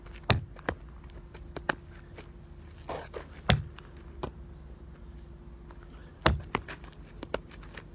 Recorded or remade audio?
recorded